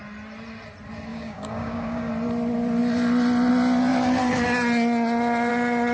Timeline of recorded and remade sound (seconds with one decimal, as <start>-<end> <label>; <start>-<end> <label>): 0.0-1.1 recorded; 1.1-2.1 remade; 2.1-5.9 recorded